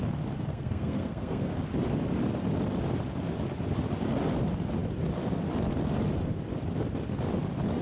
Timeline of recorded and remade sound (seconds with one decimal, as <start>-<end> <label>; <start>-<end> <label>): 0.0-0.5 recorded; 0.5-1.5 remade; 1.5-7.8 recorded